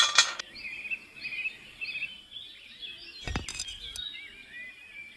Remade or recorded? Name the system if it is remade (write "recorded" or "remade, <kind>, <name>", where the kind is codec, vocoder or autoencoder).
recorded